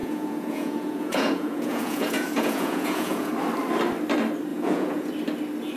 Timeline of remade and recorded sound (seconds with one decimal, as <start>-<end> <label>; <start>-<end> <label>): 0.0-3.3 remade; 3.3-4.5 recorded; 4.5-5.1 remade; 5.1-5.8 recorded